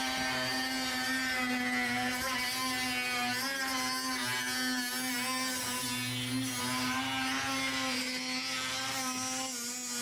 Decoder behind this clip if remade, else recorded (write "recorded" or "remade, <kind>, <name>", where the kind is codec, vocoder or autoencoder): recorded